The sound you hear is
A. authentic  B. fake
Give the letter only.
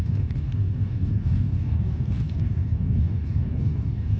B